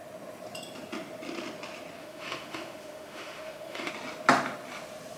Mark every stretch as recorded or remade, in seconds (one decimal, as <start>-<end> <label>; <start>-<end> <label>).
0.0-2.0 recorded; 2.0-3.9 remade; 3.9-5.2 recorded